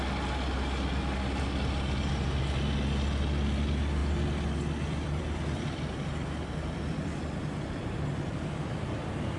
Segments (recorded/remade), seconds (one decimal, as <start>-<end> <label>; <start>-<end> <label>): 0.0-4.0 recorded; 4.0-8.9 remade; 8.9-9.4 recorded